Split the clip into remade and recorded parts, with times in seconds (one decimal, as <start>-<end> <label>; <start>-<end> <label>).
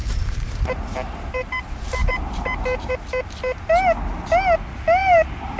0.0-2.9 remade; 2.9-5.0 recorded; 5.0-5.6 remade